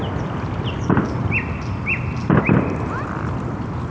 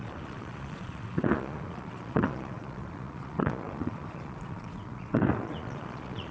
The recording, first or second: first